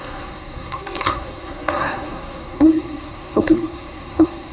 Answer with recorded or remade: remade